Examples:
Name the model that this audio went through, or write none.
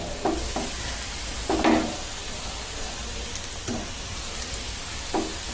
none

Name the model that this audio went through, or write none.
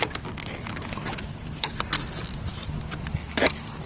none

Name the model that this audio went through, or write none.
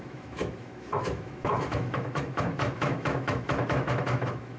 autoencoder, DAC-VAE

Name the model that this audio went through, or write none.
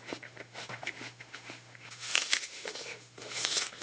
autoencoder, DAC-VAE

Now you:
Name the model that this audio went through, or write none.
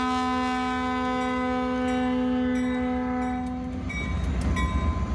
none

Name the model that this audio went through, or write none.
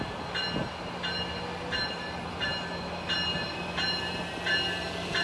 none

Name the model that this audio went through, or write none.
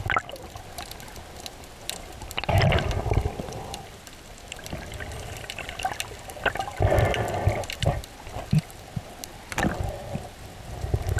none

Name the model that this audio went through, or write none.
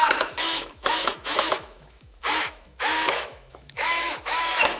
autoencoder, DAC-VAE